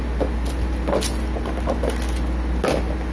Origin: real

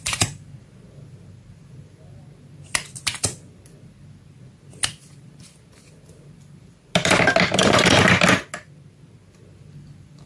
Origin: real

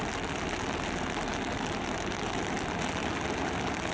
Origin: real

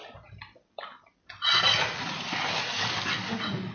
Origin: real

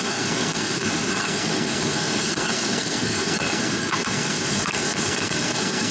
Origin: fake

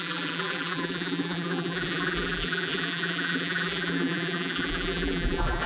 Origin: fake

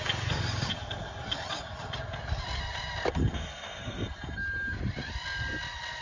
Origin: real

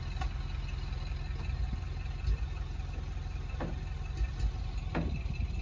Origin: real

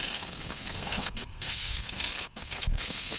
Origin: fake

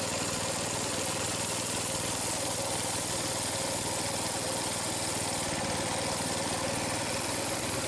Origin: real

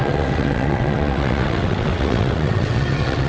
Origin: fake